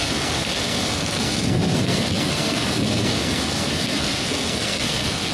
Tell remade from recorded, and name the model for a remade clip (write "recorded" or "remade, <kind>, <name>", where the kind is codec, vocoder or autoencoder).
remade, codec, SNAC